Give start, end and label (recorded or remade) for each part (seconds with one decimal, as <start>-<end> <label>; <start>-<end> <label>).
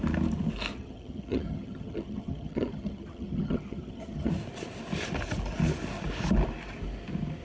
0.0-0.7 recorded; 0.7-4.3 remade; 4.3-7.4 recorded